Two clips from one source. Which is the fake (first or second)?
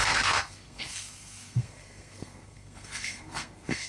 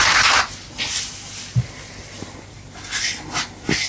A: first